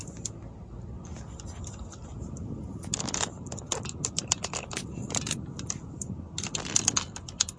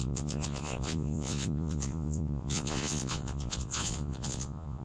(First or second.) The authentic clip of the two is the first